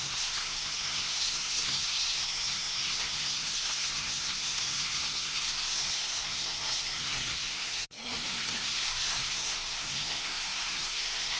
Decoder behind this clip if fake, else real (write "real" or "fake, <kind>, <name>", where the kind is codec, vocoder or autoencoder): fake, codec, SNAC